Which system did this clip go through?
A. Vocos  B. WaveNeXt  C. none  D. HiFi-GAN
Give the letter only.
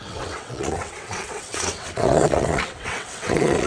B